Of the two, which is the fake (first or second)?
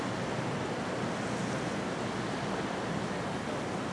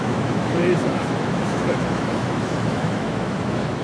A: second